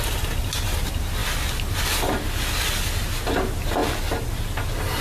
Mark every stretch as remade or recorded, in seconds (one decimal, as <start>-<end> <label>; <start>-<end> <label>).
0.0-5.0 recorded

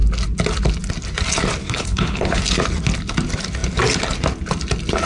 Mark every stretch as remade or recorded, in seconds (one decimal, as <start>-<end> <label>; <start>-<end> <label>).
0.0-1.6 recorded; 1.6-2.4 remade; 2.4-5.1 recorded

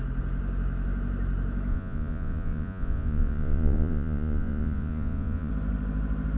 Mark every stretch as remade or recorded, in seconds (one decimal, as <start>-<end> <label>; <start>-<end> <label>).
0.0-1.7 recorded; 1.7-5.5 remade; 5.5-6.4 recorded

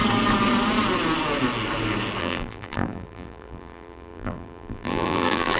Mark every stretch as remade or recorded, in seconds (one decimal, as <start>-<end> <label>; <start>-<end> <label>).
0.0-2.2 recorded; 2.2-5.6 remade

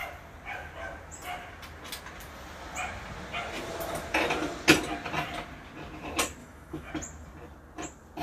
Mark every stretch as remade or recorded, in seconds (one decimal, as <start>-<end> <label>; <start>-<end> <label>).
0.0-6.4 recorded; 6.4-6.9 remade; 6.9-8.2 recorded

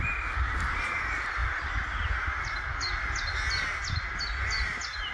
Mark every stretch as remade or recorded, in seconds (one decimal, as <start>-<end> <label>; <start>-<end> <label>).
0.0-5.1 recorded